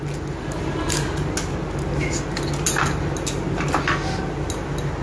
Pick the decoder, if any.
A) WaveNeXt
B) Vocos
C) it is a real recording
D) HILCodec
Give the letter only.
C